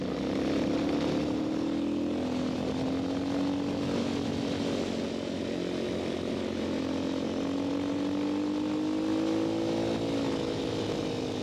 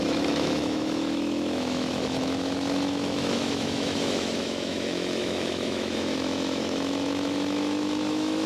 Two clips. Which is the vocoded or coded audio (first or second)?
second